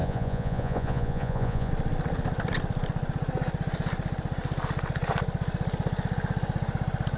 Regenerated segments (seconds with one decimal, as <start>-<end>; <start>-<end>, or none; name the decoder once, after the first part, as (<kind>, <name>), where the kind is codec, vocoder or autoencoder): 0.0-1.7 (vocoder, Vocos)